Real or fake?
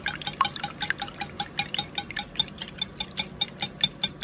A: real